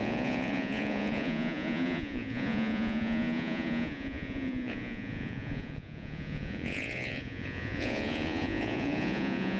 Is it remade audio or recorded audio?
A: remade